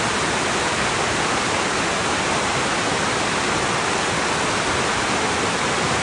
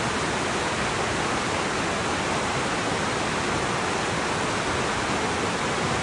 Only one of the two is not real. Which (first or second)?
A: first